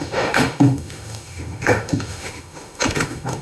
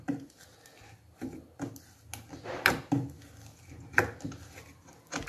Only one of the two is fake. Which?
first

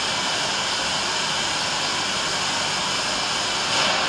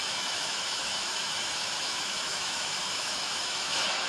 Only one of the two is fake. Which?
second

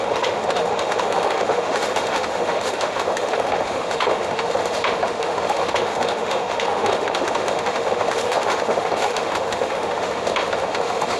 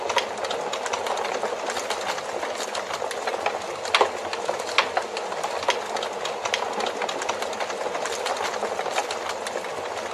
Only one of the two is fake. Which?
first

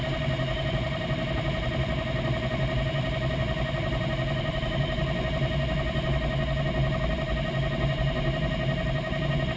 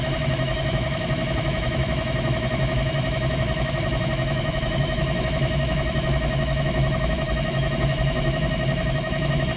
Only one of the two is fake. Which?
second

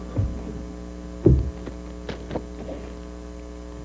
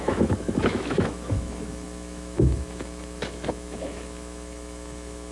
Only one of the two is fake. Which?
second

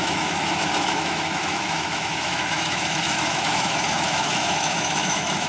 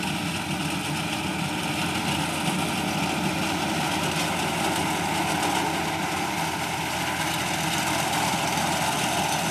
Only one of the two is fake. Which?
first